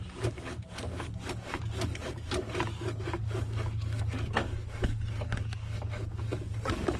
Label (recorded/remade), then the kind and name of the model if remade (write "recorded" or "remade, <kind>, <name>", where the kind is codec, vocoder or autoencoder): remade, codec, DAC